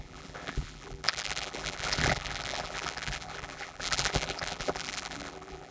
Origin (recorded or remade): remade